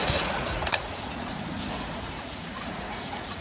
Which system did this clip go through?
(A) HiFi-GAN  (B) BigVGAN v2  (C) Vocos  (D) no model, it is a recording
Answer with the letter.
C